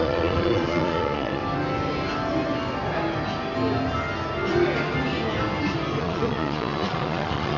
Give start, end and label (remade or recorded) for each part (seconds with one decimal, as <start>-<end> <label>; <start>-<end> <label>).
0.0-1.4 remade; 1.4-6.0 recorded; 6.0-7.6 remade